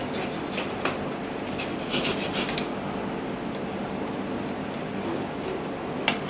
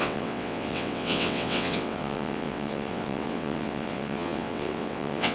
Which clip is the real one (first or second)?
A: first